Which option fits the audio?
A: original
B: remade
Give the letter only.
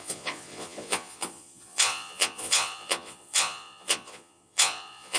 B